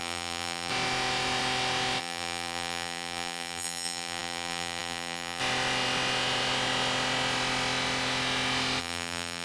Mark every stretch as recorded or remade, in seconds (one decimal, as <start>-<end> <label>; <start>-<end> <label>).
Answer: 0.0-0.7 remade; 0.7-2.0 recorded; 2.0-5.4 remade; 5.4-8.8 recorded; 8.8-9.4 remade